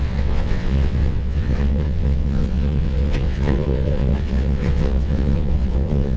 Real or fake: fake